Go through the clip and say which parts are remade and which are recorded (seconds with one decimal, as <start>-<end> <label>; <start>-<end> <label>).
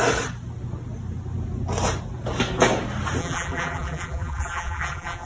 0.0-3.2 recorded; 3.2-5.3 remade